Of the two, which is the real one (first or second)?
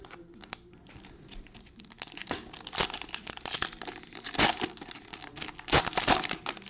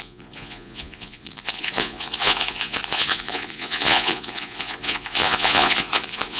first